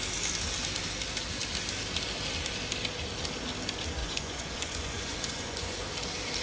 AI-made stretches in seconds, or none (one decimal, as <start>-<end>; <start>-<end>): 4.0-5.8